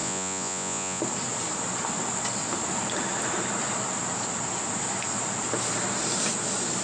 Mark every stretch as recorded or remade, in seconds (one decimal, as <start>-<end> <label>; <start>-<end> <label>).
0.0-1.0 remade; 1.0-6.8 recorded